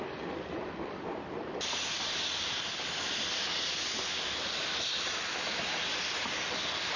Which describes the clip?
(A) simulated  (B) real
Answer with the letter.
A